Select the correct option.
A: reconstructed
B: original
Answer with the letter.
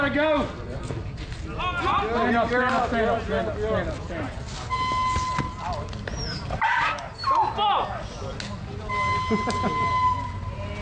B